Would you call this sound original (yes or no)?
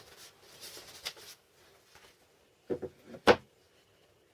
yes